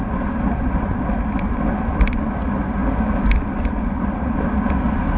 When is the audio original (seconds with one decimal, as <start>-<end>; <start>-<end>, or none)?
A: 0.0-5.2